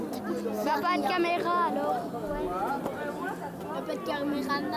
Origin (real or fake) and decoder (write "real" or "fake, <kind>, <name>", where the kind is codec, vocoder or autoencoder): real